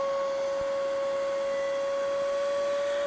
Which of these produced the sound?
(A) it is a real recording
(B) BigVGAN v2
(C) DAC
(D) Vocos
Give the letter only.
A